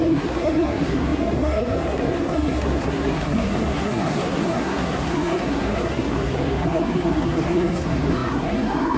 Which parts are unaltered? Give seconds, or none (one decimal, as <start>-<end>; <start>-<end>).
none